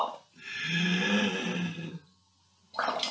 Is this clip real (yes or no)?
yes